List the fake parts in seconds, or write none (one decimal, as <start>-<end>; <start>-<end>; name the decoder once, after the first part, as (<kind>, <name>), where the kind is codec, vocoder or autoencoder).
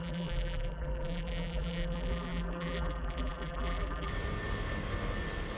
0.0-4.1 (vocoder, BigVGAN v2)